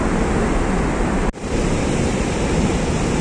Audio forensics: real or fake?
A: real